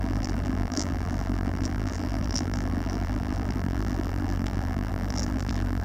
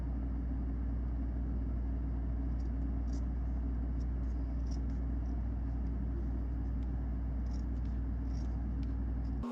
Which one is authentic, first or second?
second